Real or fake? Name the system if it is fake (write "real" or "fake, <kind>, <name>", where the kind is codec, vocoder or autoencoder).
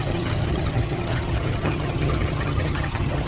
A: fake, vocoder, HiFi-GAN